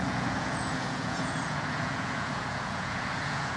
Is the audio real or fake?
fake